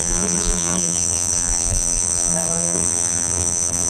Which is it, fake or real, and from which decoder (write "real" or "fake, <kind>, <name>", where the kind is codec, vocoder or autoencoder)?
fake, vocoder, BigVGAN v2